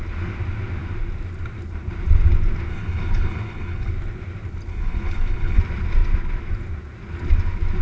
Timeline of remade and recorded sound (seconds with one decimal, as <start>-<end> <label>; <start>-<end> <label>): 0.0-2.7 recorded; 2.7-3.9 remade; 3.9-4.7 recorded; 4.7-5.6 remade; 5.6-7.8 recorded